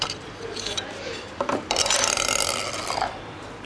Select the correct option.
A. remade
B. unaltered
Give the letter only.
A